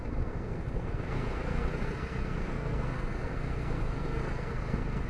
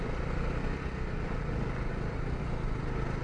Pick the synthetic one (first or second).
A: first